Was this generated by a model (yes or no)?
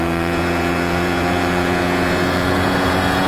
yes